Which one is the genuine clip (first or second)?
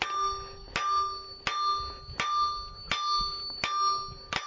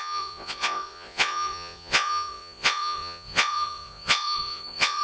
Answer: first